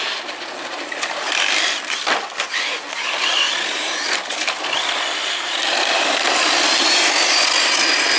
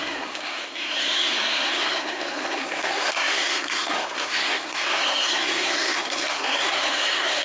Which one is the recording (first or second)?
first